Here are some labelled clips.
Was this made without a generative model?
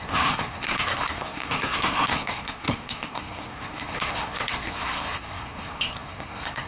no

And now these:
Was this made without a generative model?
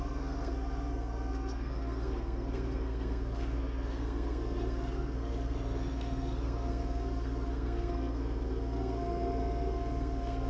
no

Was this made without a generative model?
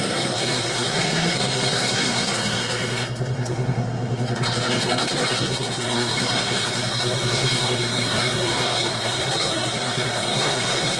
no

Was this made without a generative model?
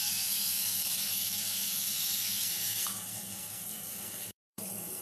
no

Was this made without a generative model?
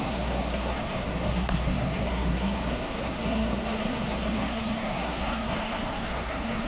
no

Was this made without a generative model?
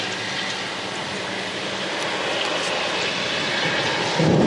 yes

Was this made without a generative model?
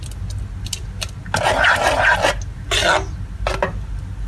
yes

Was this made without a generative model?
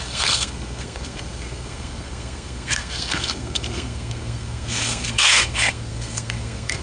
no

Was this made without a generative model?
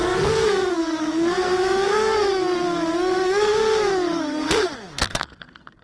no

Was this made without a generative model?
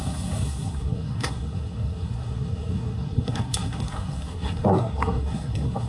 no